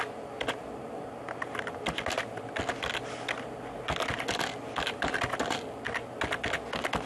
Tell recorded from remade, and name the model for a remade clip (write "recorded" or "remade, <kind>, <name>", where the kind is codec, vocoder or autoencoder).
recorded